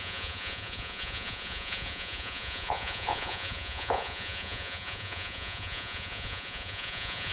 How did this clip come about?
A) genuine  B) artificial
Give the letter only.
B